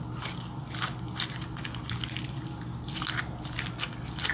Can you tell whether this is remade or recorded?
recorded